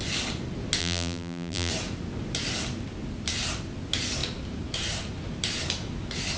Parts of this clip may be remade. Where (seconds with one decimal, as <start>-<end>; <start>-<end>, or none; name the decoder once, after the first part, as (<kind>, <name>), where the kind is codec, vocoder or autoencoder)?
0.8-1.7 (vocoder, BigVGAN v2)